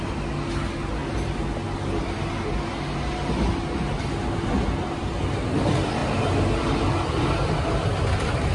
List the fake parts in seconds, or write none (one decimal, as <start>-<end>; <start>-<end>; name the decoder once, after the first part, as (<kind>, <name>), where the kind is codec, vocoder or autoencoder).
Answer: none